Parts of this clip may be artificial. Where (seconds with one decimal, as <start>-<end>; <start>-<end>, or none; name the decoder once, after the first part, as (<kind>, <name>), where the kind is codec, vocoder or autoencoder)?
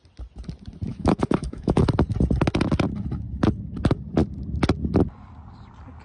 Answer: 0.9-1.8 (autoencoder, DAC-VAE)